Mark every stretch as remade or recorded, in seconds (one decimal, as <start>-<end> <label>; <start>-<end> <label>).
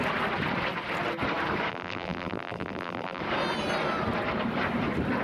0.0-1.7 recorded; 1.7-3.2 remade; 3.2-5.2 recorded